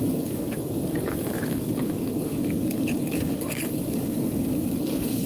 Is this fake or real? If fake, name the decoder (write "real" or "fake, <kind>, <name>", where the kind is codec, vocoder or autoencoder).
fake, codec, DAC